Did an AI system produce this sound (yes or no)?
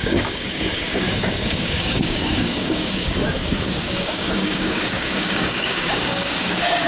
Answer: yes